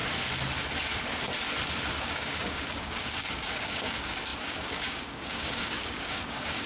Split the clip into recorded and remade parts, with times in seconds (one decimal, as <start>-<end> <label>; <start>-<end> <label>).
0.0-2.0 recorded; 2.0-6.7 remade